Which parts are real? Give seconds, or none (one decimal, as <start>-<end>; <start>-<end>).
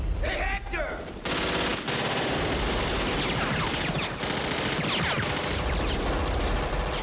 0.0-7.0